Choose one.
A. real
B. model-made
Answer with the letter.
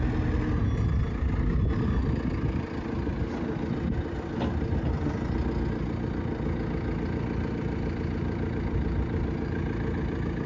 A